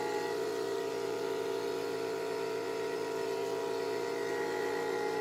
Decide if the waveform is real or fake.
fake